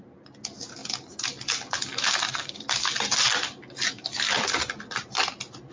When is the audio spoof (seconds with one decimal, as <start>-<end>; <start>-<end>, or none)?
none